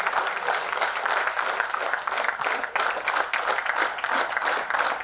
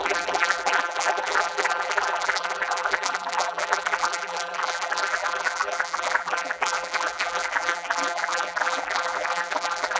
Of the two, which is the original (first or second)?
first